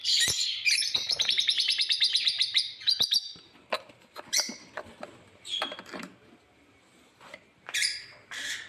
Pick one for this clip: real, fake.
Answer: fake